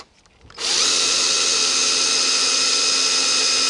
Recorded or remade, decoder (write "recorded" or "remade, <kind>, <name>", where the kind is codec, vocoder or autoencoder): recorded